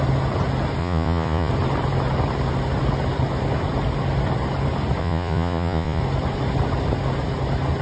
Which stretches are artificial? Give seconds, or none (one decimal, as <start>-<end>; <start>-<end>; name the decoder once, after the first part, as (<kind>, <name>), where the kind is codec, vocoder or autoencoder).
0.8-1.5 (vocoder, Vocos); 5.0-6.0